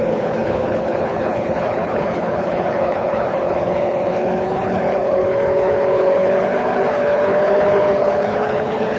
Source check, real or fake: fake